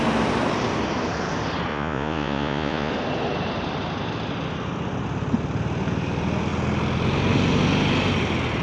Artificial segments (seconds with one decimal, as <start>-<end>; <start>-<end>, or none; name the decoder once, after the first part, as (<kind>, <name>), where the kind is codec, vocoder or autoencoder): 1.7-2.9 (vocoder, Vocos)